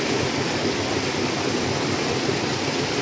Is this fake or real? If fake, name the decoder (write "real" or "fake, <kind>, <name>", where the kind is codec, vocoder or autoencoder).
real